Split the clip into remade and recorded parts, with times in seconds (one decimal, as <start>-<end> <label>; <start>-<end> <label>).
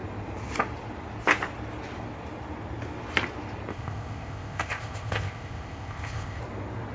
0.0-3.7 recorded; 3.7-6.4 remade; 6.4-6.9 recorded